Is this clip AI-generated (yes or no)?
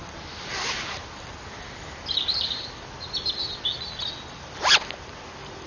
no